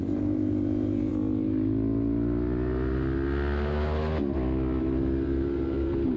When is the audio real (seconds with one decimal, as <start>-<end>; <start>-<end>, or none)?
1.1-4.8